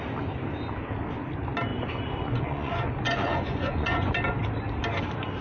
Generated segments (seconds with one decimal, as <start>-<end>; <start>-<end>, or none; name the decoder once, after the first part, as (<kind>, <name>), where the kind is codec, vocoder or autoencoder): 1.7-4.1 (vocoder, Vocos)